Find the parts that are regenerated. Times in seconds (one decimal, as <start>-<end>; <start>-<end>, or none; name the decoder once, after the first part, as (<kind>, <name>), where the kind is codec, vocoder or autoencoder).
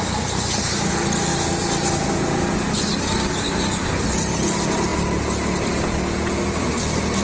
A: none